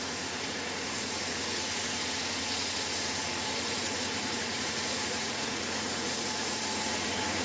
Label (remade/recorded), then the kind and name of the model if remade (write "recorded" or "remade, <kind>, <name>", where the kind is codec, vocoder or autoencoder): remade, vocoder, Vocos